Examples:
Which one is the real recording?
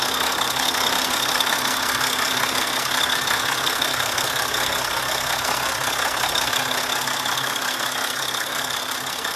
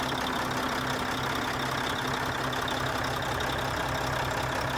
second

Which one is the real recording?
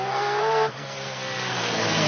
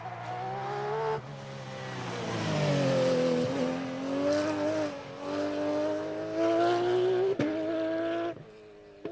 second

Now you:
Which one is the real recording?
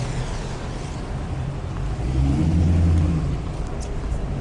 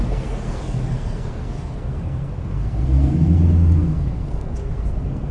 first